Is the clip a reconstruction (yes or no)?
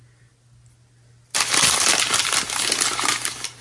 no